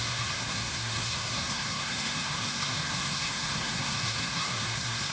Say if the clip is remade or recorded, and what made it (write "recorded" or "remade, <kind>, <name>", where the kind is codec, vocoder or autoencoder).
remade, codec, SNAC